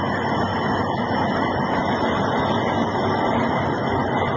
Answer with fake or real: real